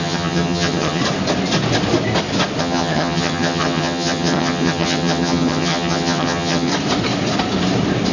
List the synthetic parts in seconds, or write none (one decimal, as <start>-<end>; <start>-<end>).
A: 0.0-1.0; 2.6-6.7